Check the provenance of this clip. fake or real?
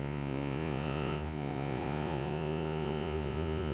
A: fake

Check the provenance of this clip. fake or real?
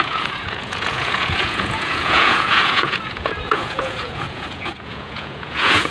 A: fake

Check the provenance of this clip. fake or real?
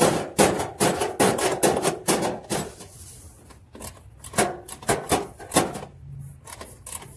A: real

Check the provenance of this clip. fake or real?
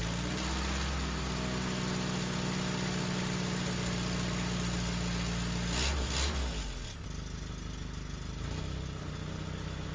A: real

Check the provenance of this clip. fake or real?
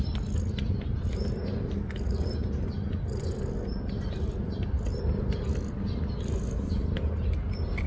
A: real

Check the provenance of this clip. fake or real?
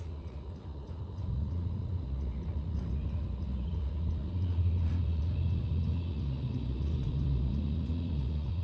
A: fake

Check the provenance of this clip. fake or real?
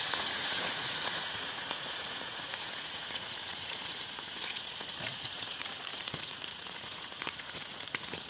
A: fake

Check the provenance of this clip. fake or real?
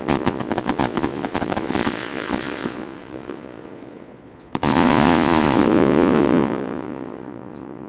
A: fake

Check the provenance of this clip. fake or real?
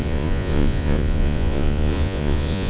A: fake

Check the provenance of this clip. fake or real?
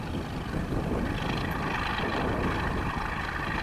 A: real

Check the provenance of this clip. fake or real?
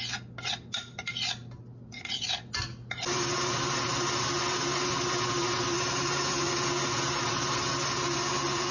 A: real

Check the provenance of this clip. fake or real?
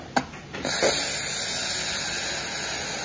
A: real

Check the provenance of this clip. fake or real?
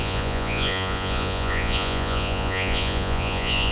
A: fake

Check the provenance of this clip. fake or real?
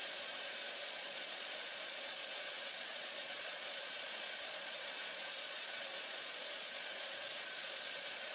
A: fake